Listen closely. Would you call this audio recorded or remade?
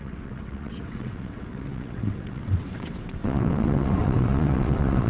remade